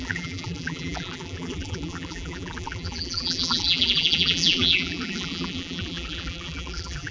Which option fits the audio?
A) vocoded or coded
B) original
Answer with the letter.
A